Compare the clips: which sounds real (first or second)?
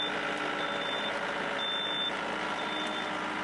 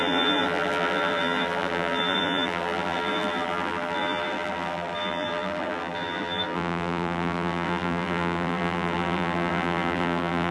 first